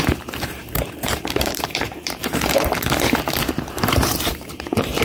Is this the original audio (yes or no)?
no